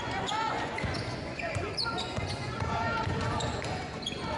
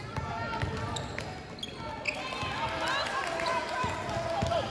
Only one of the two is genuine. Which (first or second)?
second